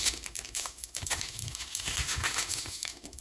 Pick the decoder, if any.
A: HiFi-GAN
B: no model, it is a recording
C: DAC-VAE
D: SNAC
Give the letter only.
C